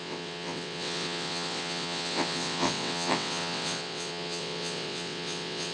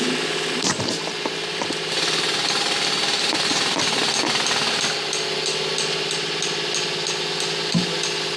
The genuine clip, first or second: second